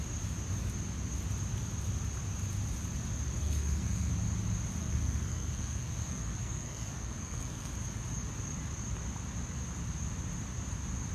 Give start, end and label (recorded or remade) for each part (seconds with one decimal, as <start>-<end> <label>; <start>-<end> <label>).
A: 0.0-3.4 recorded; 3.4-4.1 remade; 4.1-4.8 recorded; 4.8-7.7 remade; 7.7-11.1 recorded